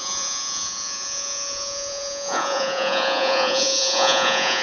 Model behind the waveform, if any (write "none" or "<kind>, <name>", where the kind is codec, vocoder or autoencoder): vocoder, Vocos